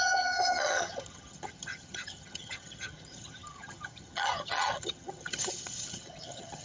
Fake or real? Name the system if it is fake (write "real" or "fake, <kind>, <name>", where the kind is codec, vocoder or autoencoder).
fake, vocoder, HiFi-GAN